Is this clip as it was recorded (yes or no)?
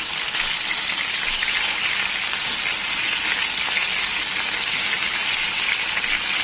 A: yes